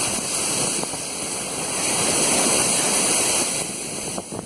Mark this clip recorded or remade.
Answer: recorded